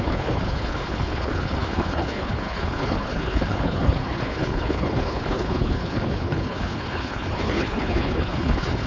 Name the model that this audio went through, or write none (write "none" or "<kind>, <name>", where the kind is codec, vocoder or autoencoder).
codec, HILCodec